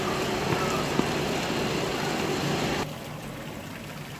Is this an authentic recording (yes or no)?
yes